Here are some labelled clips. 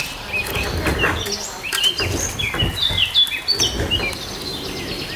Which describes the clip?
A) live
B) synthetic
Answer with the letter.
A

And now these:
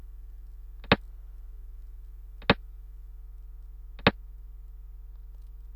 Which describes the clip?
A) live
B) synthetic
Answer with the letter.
A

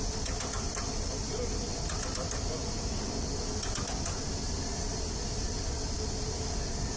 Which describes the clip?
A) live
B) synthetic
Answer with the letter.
A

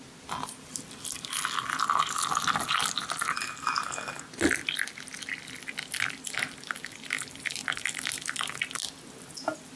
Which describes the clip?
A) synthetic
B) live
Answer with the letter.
B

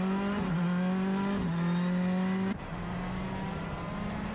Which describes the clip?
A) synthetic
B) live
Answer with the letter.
B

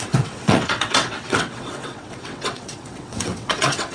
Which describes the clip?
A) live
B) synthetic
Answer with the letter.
B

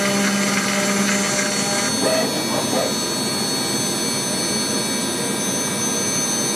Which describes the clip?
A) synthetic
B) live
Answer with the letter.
B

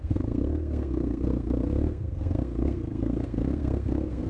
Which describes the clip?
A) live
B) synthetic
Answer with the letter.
B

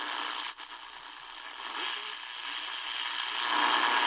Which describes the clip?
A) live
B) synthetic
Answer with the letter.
A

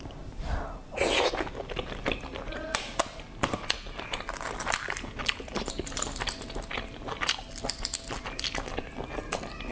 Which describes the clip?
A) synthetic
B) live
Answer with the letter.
B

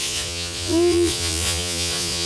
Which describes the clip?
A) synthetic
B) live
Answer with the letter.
A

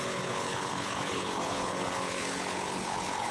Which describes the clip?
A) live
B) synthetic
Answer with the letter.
B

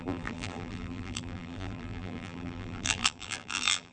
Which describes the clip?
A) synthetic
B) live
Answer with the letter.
A